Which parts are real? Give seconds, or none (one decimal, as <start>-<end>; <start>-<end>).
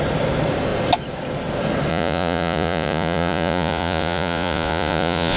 0.0-1.9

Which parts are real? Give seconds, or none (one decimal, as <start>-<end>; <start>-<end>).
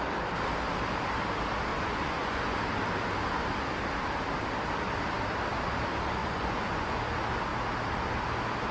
0.0-1.7; 2.6-6.2; 7.0-8.7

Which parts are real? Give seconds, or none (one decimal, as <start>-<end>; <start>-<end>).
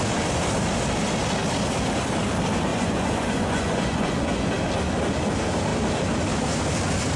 0.0-2.7; 4.5-7.2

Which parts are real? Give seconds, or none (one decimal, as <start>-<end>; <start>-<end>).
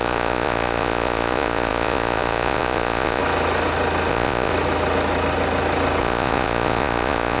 3.2-4.1; 4.5-6.0